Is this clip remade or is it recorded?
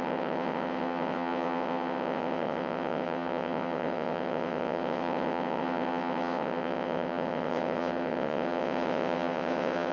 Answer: remade